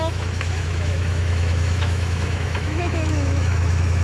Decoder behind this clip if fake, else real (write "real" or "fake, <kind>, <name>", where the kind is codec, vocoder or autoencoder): fake, autoencoder, DAC-VAE